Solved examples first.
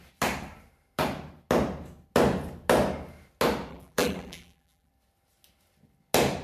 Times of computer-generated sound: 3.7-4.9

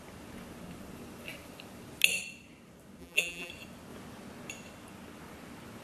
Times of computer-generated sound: 3.0-3.5